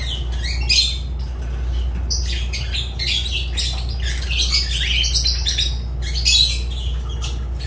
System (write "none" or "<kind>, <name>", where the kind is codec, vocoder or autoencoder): none